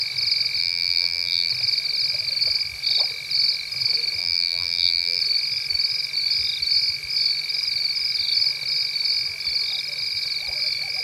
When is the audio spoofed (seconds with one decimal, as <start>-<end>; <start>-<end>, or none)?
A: 0.6-1.5; 4.2-5.2